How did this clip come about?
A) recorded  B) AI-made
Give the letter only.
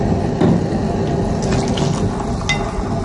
A